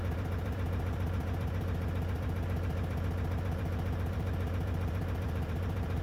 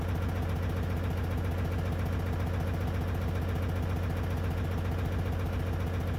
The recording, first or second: second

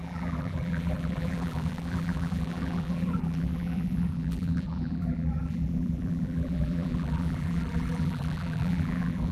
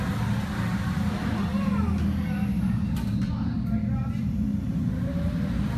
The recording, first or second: second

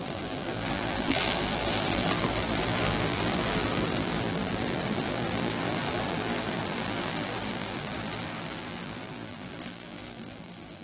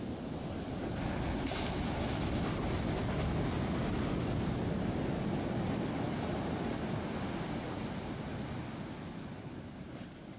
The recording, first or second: second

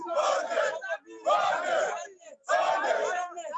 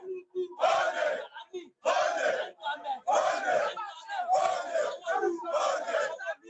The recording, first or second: first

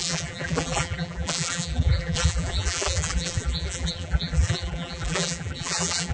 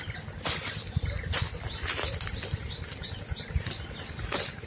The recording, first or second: second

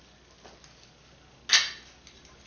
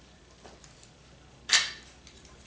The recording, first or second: first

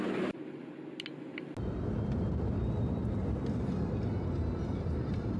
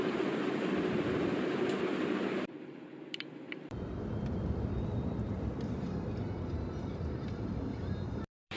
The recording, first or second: first